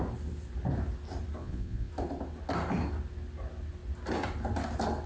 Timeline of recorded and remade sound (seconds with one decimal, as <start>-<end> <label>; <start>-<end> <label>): 0.0-1.4 recorded; 1.4-1.9 remade; 1.9-5.1 recorded